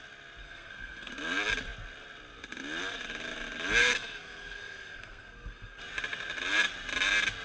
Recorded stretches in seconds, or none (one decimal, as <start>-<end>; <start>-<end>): 0.0-0.4; 1.1-3.8; 5.8-7.4